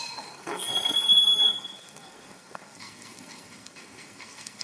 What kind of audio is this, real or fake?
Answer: fake